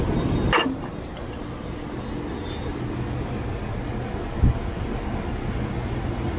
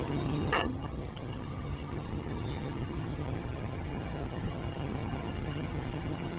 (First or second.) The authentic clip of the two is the first